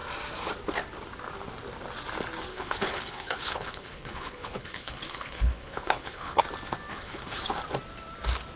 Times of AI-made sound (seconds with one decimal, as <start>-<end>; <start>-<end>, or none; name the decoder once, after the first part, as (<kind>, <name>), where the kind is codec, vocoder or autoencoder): 2.5-6.4 (codec, HILCodec); 6.9-7.4